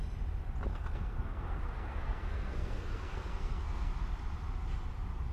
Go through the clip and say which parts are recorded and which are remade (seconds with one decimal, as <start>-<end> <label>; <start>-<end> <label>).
0.0-0.7 recorded; 0.7-3.9 remade; 3.9-5.3 recorded